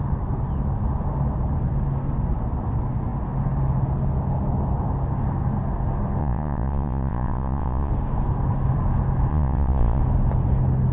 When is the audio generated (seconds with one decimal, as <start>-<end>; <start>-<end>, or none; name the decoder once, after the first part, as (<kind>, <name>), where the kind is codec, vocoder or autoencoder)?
6.2-7.9 (vocoder, Vocos); 9.3-10.0